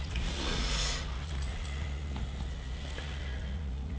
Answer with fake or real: fake